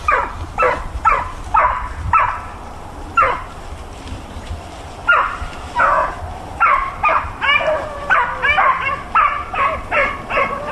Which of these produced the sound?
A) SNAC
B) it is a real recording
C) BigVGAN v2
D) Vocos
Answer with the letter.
C